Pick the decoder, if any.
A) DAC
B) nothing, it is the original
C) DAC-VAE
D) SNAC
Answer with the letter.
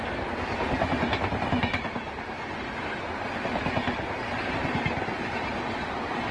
B